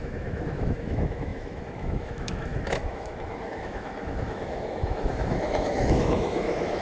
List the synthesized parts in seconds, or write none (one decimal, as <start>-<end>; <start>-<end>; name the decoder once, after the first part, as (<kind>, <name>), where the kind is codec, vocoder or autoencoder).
0.0-6.8 (autoencoder, DAC-VAE)